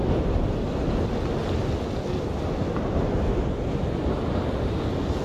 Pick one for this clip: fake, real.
real